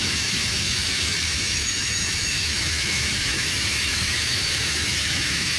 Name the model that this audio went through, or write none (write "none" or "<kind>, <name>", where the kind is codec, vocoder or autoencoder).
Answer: autoencoder, DAC-VAE